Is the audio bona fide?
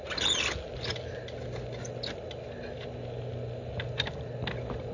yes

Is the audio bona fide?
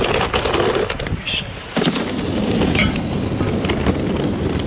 yes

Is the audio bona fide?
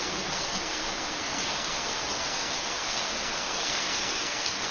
no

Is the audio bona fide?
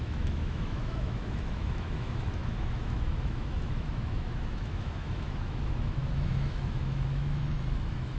no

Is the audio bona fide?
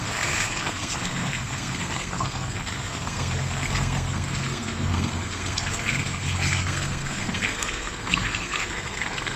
no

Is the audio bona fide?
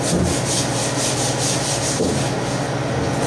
yes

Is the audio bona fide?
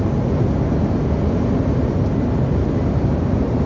yes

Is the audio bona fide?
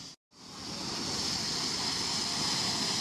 yes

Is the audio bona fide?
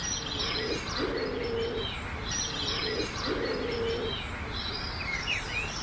yes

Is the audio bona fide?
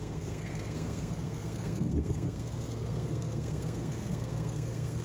no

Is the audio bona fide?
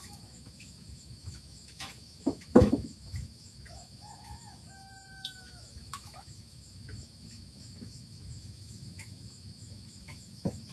no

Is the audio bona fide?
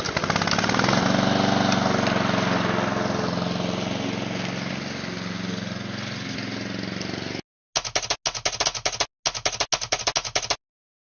yes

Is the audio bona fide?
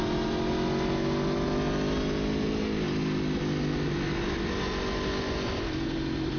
yes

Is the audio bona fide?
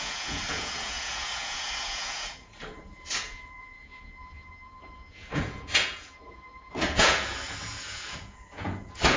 no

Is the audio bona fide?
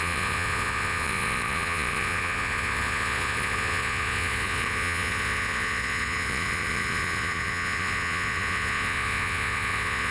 no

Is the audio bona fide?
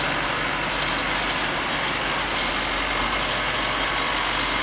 yes